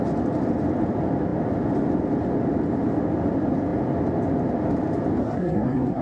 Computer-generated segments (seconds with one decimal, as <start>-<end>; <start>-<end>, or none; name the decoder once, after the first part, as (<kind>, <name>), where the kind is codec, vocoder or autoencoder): 5.2-6.0 (codec, SNAC)